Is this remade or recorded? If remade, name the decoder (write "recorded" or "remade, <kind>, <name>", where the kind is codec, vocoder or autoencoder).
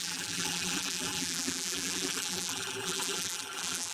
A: remade, vocoder, BigVGAN v2